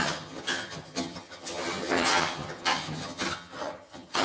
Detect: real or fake fake